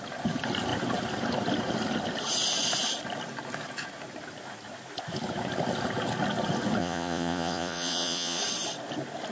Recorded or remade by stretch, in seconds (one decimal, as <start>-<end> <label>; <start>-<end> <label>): 0.0-6.8 recorded; 6.8-8.4 remade; 8.4-9.3 recorded

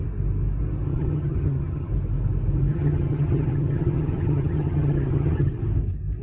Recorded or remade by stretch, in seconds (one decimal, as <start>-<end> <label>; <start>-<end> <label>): 0.0-0.9 recorded; 0.9-1.9 remade; 1.9-2.7 recorded; 2.7-5.5 remade; 5.5-6.2 recorded

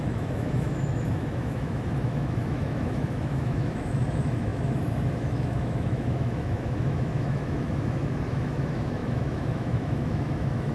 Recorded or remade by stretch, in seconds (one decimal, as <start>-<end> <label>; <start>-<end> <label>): 0.0-10.7 remade

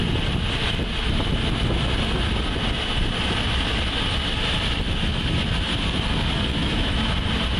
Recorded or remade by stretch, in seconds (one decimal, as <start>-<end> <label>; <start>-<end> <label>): 0.0-6.5 recorded; 6.5-7.1 remade; 7.1-7.6 recorded